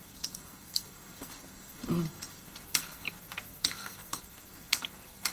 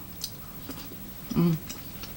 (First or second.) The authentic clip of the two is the second